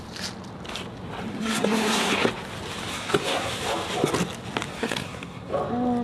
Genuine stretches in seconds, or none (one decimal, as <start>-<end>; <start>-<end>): 0.0-1.3; 2.1-2.9; 3.5-4.7; 5.5-6.0